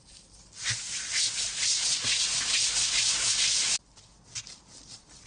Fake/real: real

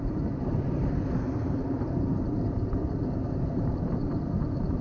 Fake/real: fake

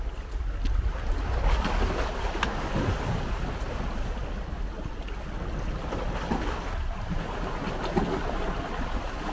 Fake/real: real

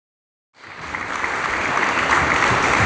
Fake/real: real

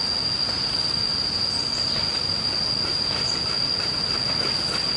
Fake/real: real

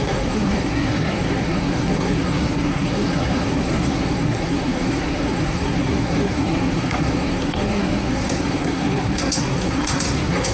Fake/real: fake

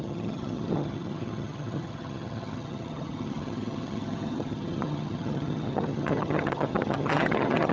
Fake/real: fake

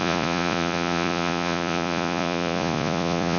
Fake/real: fake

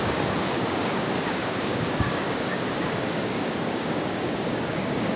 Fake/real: fake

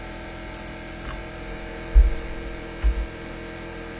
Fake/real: real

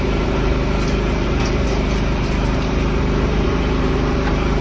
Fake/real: fake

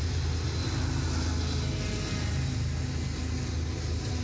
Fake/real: real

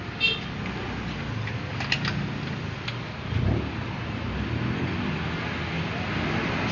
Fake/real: real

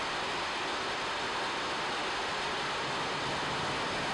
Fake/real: real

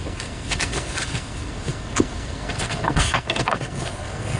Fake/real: fake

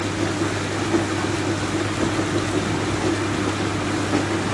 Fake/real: real